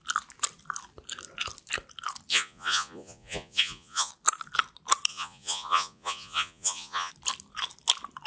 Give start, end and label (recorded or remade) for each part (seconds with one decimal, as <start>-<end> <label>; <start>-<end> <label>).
0.0-2.3 recorded; 2.3-4.1 remade; 4.1-5.1 recorded; 5.1-7.1 remade; 7.1-8.3 recorded